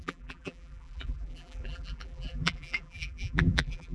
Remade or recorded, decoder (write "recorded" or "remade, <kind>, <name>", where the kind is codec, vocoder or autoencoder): remade, vocoder, BigVGAN v2